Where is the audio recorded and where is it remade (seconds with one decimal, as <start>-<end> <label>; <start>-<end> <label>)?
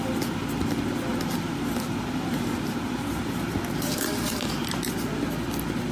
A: 0.0-1.1 recorded; 1.1-4.1 remade; 4.1-5.9 recorded